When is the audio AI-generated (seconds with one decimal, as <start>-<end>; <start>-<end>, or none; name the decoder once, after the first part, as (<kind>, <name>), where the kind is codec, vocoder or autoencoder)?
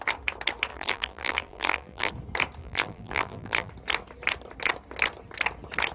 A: 0.7-2.1 (vocoder, BigVGAN v2); 2.6-3.7